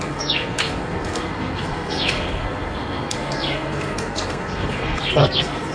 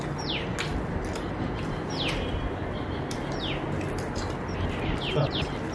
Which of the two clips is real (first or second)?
second